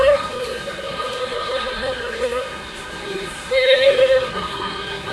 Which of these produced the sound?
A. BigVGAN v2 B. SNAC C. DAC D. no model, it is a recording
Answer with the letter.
B